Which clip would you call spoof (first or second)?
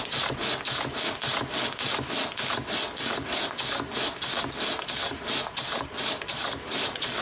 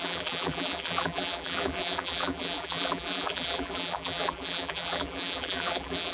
second